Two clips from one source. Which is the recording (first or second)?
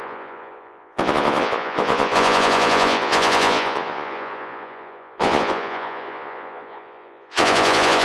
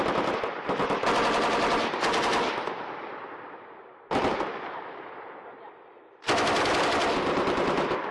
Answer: second